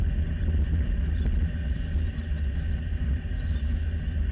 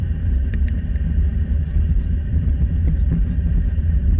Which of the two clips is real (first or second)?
first